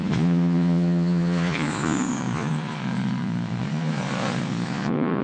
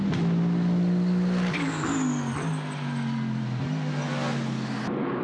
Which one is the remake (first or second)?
first